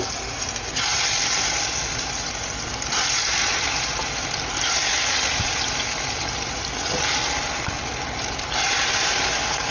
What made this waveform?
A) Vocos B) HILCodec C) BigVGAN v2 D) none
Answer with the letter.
D